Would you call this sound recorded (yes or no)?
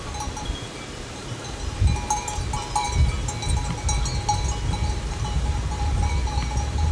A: yes